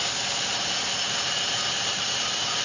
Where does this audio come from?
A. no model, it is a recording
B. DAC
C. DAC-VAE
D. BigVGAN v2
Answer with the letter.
A